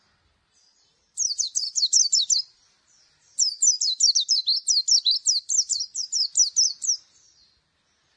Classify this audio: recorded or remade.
recorded